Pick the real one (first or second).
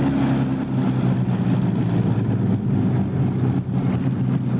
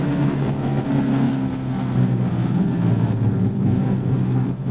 first